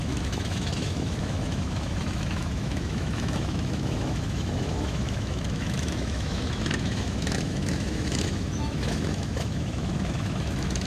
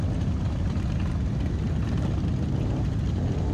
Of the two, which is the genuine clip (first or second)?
second